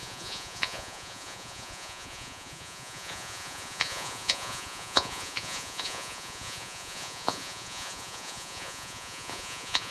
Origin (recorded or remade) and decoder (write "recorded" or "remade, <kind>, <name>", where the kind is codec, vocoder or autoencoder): remade, vocoder, Vocos